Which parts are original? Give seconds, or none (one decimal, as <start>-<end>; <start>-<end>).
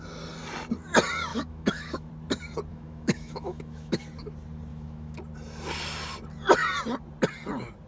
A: 0.0-1.3; 2.1-2.7; 4.0-4.7; 5.2-7.9